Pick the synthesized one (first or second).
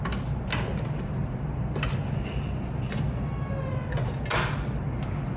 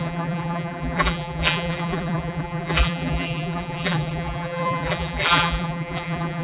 second